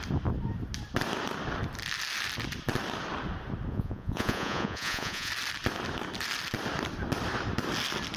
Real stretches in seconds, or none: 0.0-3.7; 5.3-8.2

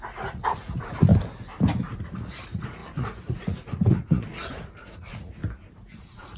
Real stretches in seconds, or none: 1.1-2.1; 5.4-6.0

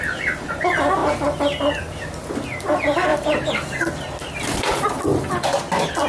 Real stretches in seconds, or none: 0.0-3.1; 3.8-5.1; 5.6-6.1

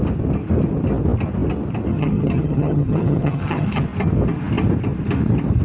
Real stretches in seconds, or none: 0.0-1.9; 3.8-5.6

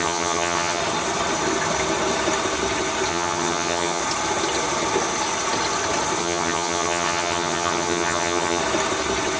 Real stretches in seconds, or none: 0.8-3.1; 4.0-6.2; 8.6-9.4